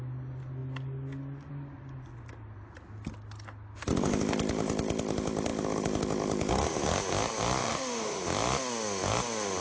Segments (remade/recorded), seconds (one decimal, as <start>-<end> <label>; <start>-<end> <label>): 0.0-7.6 recorded; 7.6-8.2 remade; 8.2-9.6 recorded